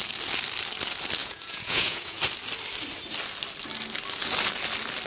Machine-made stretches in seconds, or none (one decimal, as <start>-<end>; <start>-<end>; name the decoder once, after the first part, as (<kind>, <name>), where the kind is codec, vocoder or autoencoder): 1.2-2.2 (vocoder, Vocos)